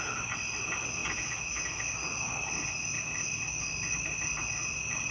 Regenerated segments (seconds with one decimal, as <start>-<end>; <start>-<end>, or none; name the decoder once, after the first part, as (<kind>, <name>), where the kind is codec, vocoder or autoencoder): 1.0-1.8 (autoencoder, DAC-VAE)